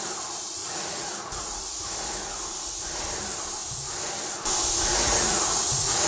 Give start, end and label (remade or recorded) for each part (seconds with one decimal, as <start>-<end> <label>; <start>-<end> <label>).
0.0-0.6 recorded; 0.6-3.0 remade; 3.0-4.9 recorded; 4.9-6.1 remade